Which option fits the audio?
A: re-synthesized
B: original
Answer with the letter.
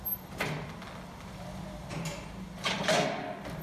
B